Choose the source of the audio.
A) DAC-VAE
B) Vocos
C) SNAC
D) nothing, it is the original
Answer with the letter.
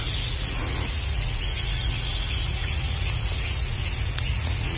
B